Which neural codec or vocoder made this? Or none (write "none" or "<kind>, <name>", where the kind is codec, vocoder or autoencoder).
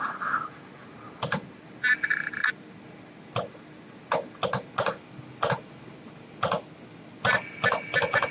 none